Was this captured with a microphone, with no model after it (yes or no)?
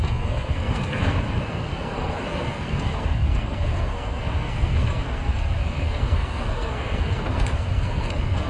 no